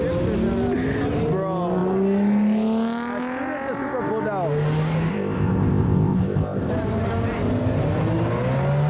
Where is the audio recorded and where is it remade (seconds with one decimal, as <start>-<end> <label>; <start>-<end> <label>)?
0.0-5.1 recorded; 5.1-6.7 remade; 6.7-8.9 recorded